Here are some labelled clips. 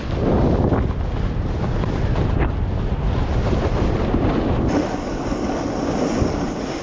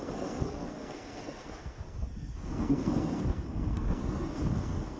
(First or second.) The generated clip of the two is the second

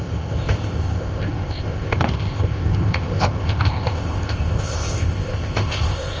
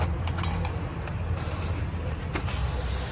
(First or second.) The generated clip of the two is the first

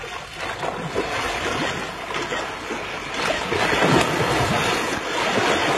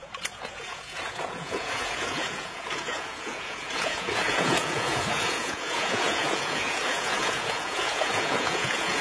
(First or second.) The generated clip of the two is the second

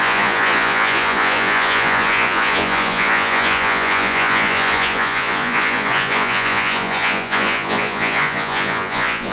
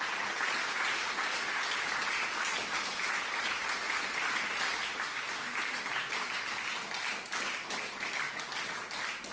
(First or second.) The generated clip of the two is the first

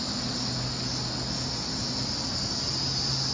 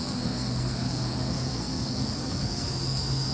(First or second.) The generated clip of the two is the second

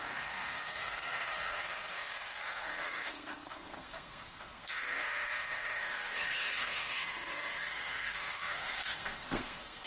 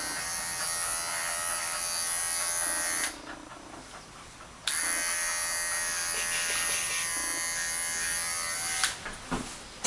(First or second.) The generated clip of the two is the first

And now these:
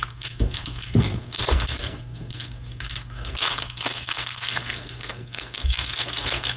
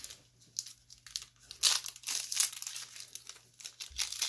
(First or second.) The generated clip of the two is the first